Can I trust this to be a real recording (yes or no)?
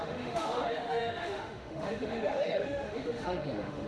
no